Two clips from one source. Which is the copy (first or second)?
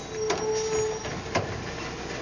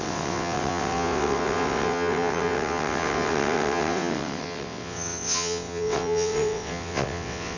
second